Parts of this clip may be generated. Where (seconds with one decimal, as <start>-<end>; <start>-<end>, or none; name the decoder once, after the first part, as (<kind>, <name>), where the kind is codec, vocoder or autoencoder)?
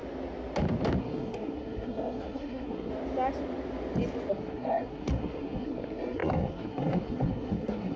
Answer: 1.0-2.9 (codec, SNAC); 4.3-8.0